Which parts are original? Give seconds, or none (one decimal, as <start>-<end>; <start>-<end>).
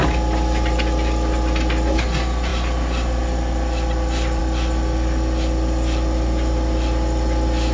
0.0-7.7